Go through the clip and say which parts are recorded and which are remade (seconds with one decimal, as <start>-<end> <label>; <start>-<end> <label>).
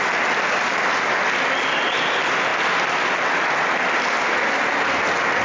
0.0-5.4 recorded